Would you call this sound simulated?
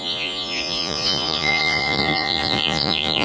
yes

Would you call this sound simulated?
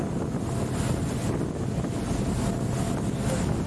no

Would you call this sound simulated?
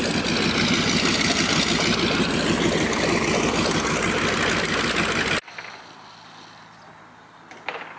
no